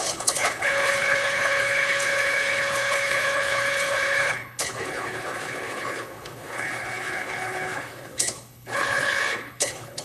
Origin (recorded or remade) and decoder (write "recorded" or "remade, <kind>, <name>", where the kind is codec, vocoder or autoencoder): remade, codec, HILCodec